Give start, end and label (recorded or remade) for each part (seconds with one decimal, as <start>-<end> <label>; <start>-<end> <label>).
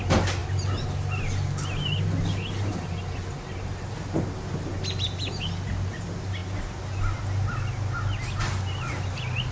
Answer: 0.0-9.5 recorded